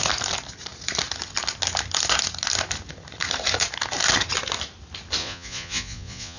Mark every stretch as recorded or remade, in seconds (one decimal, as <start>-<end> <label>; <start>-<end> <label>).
0.0-5.2 recorded; 5.2-6.4 remade